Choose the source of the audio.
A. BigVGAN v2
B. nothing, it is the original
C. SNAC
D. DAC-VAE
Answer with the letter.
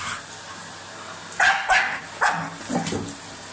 A